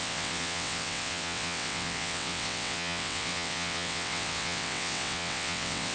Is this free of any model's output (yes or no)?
no